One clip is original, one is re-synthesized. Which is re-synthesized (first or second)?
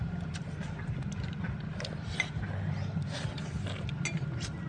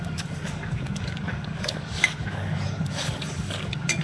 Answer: second